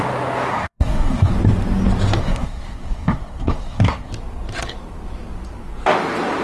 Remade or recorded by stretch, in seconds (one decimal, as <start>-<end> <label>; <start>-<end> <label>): 0.0-0.5 recorded; 0.5-1.3 remade; 1.3-2.2 recorded; 2.2-4.1 remade; 4.1-6.4 recorded